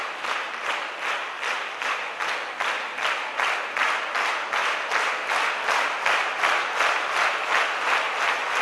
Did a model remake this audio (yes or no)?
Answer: no